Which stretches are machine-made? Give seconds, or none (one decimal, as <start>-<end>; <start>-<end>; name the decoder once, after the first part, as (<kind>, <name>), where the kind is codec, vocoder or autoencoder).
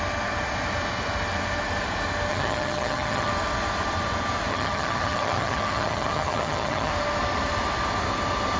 2.3-3.3 (vocoder, HiFi-GAN); 4.5-6.9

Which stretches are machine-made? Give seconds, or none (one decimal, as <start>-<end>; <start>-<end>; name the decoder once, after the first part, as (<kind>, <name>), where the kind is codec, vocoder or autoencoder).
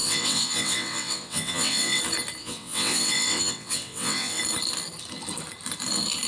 0.0-2.0 (vocoder, WaveNeXt); 2.4-4.4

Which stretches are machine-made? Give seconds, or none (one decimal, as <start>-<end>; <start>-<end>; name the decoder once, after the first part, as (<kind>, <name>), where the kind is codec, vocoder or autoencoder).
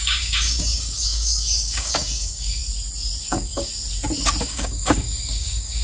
0.0-2.6 (codec, DAC); 3.2-3.7; 4.4-5.8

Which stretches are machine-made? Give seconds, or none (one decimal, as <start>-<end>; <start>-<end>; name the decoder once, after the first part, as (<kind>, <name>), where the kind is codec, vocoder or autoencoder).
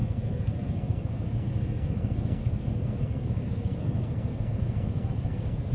0.0-5.7 (codec, SNAC)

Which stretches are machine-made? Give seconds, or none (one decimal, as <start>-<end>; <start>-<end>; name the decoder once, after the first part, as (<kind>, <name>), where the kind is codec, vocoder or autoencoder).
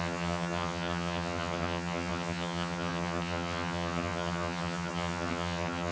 0.0-5.9 (vocoder, HiFi-GAN)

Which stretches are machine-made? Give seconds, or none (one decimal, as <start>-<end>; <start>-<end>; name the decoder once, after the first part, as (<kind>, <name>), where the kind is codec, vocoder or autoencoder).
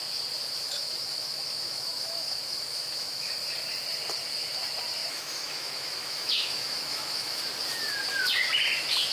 0.8-3.3 (autoencoder, DAC-VAE); 5.0-7.4